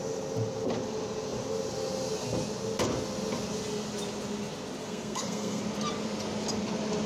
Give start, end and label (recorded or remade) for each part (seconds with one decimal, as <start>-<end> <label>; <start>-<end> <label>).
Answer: 0.0-4.8 recorded; 4.8-5.6 remade; 5.6-7.1 recorded